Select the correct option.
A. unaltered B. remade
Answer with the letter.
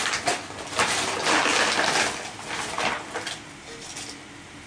A